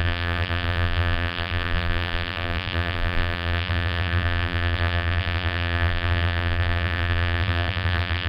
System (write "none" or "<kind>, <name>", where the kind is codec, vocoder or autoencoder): vocoder, BigVGAN v2